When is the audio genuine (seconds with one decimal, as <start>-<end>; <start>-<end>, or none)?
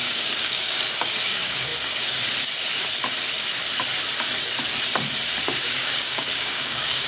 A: 1.7-5.6